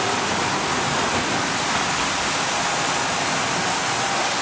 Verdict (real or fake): real